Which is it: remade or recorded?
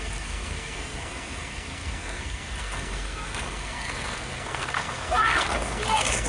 remade